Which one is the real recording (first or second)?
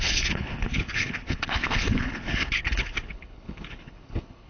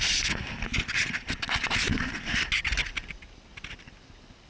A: second